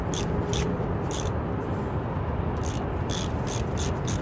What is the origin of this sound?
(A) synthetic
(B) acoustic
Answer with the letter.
A